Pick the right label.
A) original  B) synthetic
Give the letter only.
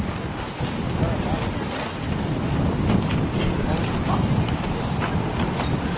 A